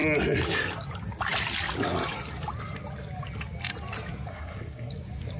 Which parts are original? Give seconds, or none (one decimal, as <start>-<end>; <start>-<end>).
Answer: 0.0-4.3; 4.9-5.4